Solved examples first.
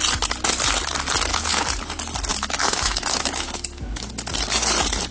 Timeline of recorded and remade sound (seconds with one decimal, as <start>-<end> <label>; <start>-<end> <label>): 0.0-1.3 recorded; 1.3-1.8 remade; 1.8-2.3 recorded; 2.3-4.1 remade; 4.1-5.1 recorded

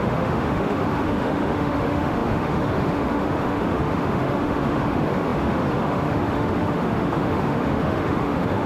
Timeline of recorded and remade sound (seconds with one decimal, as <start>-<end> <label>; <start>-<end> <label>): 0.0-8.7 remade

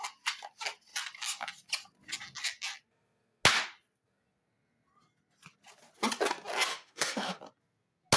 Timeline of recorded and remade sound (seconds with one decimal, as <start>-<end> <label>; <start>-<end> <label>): 0.0-6.7 recorded; 6.7-7.4 remade; 7.4-8.2 recorded

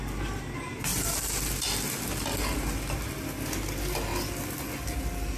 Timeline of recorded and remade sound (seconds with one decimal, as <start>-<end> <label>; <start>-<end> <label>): 0.0-5.4 recorded

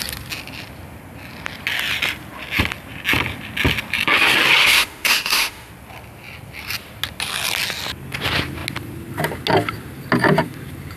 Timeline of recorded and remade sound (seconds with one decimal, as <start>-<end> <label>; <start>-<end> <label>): 0.0-4.6 recorded; 4.6-5.7 remade; 5.7-11.0 recorded